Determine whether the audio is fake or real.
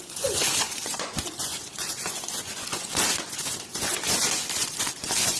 fake